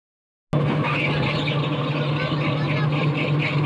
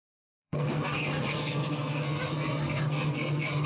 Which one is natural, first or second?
first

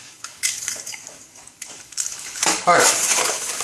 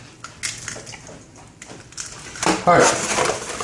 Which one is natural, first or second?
second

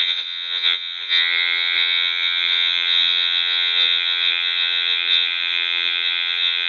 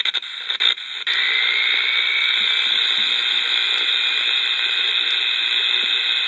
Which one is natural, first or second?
second